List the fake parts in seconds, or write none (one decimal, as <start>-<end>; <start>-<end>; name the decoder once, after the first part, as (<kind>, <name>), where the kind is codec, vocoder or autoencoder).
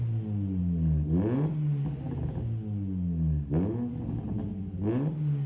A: none